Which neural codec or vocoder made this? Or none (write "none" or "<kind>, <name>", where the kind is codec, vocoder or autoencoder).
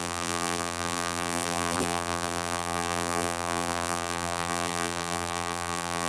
vocoder, BigVGAN v2